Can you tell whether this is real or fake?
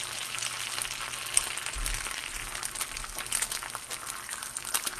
real